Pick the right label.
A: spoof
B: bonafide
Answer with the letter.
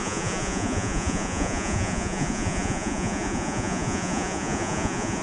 A